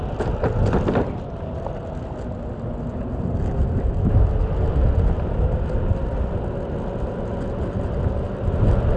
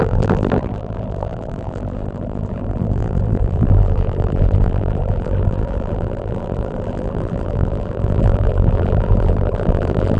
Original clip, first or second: first